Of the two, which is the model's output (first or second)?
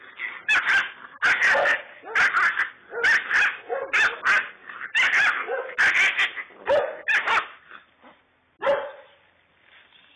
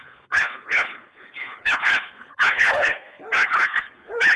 second